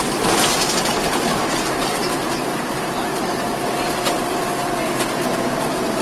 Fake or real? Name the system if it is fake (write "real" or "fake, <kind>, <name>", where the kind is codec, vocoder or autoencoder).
real